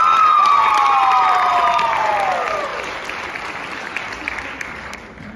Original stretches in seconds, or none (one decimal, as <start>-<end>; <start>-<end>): 0.0-5.4